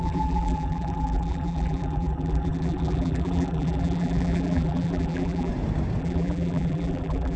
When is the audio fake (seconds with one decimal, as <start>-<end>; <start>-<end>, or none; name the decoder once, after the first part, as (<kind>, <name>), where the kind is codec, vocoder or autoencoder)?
0.0-5.5 (vocoder, BigVGAN v2); 6.0-7.4